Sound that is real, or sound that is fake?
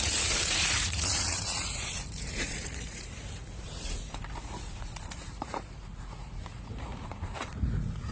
fake